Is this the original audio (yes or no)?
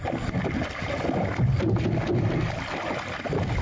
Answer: yes